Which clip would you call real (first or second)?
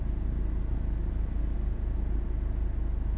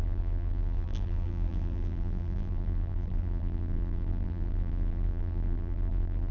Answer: first